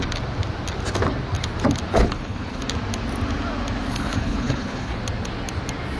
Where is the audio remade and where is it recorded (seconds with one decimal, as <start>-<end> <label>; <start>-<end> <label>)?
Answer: 0.0-1.9 recorded; 1.9-2.6 remade; 2.6-3.9 recorded; 3.9-5.0 remade; 5.0-6.0 recorded